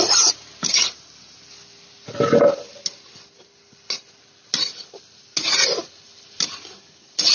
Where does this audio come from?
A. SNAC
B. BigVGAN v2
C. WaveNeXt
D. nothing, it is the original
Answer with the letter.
D